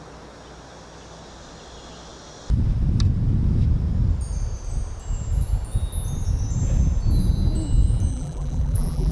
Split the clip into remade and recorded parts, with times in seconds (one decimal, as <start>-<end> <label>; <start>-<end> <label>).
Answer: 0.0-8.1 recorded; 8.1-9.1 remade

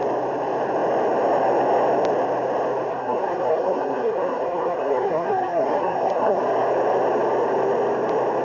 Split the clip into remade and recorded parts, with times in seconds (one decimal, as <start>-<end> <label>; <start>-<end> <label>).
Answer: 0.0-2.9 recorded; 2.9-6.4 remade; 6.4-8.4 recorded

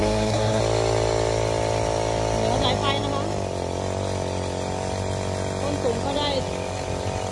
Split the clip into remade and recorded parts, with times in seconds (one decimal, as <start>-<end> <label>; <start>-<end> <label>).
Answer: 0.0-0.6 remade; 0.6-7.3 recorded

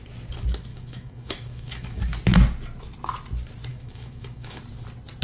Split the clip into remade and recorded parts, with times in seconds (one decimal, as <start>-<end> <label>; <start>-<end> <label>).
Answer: 0.0-0.7 recorded; 0.7-2.0 remade; 2.0-3.7 recorded; 3.7-4.6 remade; 4.6-5.2 recorded